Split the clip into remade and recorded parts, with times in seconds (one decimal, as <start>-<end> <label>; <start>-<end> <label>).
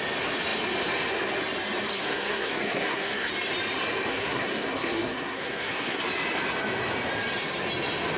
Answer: 0.0-1.9 recorded; 1.9-3.3 remade; 3.3-4.1 recorded; 4.1-6.0 remade; 6.0-8.2 recorded